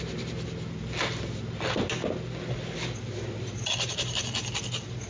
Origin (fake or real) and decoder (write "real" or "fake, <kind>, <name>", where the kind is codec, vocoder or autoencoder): real